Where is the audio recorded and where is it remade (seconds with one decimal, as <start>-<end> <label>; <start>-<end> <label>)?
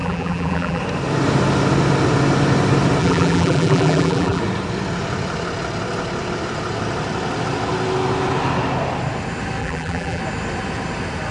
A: 0.0-0.8 remade; 0.8-3.0 recorded; 3.0-4.4 remade; 4.4-9.6 recorded; 9.6-10.2 remade; 10.2-11.3 recorded